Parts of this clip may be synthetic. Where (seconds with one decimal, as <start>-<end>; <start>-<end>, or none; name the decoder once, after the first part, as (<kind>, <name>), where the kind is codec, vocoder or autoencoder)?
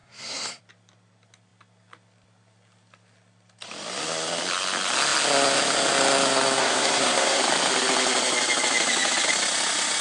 0.0-0.6 (codec, SNAC); 6.6-7.4